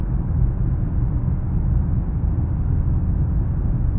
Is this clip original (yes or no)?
yes